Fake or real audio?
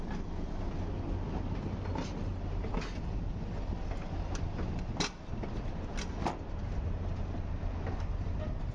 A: real